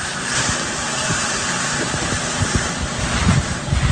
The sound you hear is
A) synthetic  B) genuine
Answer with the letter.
A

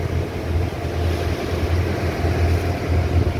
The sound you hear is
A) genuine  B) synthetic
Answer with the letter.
A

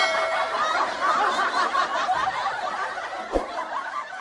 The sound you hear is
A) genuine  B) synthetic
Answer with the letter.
B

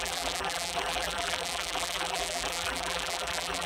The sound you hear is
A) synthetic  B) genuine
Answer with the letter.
A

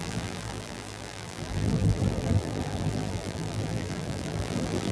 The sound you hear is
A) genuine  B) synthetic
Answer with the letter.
B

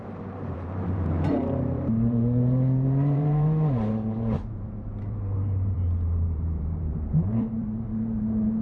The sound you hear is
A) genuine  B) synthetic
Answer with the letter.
B